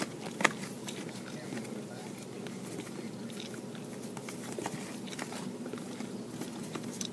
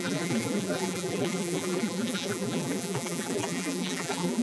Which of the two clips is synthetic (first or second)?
second